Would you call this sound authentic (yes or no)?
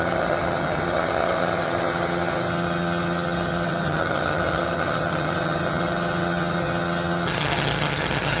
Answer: no